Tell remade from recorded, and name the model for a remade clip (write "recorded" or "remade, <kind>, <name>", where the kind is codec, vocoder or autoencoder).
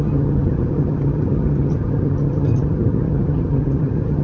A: remade, vocoder, HiFi-GAN